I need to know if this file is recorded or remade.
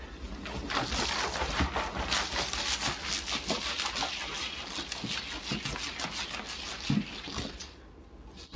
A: recorded